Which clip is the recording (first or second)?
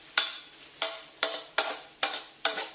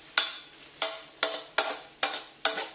second